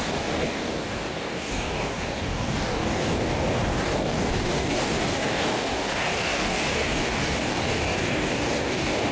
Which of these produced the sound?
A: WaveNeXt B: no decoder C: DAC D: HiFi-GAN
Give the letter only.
C